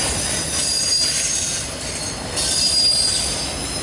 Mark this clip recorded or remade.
recorded